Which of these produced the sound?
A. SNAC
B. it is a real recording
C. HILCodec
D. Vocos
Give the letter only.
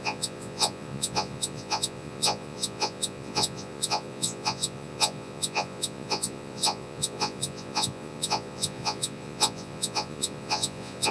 D